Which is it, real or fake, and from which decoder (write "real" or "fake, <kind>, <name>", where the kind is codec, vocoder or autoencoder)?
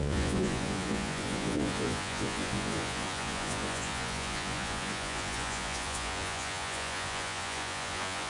fake, vocoder, Vocos